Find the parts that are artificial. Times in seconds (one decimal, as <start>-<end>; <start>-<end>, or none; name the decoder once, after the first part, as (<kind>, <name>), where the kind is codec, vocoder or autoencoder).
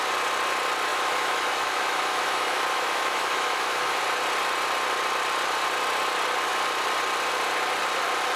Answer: 0.9-4.0 (autoencoder, DAC-VAE)